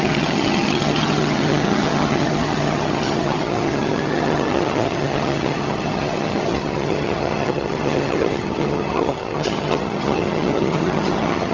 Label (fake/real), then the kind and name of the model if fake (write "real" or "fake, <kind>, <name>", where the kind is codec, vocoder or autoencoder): fake, vocoder, HiFi-GAN